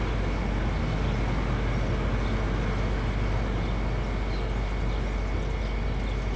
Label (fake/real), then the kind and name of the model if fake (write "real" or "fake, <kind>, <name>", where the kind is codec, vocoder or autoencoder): real